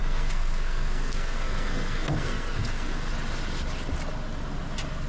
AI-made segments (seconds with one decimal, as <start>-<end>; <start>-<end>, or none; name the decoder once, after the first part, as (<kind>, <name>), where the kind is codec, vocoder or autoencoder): 0.0-3.1 (codec, SNAC)